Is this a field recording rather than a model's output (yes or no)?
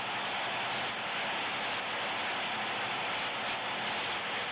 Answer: yes